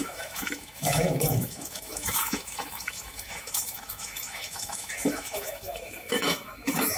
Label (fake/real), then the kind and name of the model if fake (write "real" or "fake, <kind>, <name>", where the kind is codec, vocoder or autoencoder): fake, autoencoder, DAC-VAE